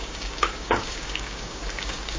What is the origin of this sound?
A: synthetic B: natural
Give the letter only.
A